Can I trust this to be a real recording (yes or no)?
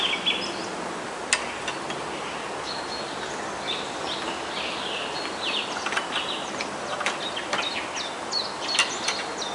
yes